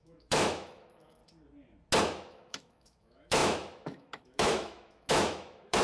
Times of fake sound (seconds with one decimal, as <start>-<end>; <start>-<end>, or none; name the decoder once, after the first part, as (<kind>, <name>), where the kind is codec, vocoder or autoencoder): 0.0-1.2 (autoencoder, DAC-VAE); 2.0-5.8

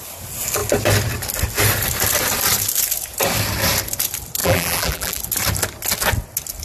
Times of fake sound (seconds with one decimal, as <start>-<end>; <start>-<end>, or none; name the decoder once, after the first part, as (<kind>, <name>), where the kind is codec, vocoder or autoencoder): 4.4-5.2 (vocoder, BigVGAN v2)

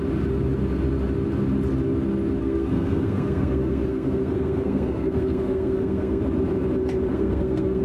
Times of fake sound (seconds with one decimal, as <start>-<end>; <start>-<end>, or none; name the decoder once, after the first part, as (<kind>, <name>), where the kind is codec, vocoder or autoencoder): 2.4-6.2 (codec, SNAC); 7.1-7.8

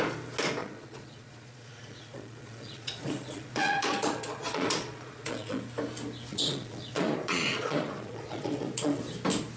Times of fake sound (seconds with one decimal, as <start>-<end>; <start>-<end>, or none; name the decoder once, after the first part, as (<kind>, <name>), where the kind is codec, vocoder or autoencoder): 0.6-5.6 (vocoder, Vocos); 6.3-9.0